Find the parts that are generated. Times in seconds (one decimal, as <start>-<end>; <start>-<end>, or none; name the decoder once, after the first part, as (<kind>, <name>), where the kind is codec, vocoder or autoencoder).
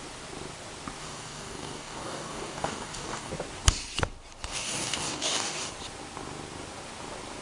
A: 1.0-3.3 (codec, DAC); 4.5-5.7